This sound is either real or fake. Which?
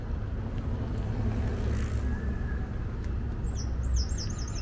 real